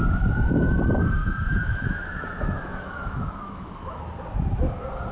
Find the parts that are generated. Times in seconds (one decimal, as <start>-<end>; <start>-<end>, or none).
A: 1.2-4.0